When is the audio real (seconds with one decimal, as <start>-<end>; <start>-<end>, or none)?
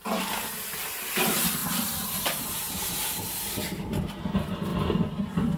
0.0-0.8; 4.7-5.6